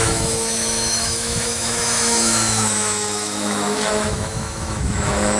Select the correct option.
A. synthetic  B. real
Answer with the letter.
A